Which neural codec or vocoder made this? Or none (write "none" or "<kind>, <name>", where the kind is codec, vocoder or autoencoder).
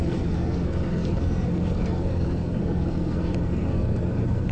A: codec, SNAC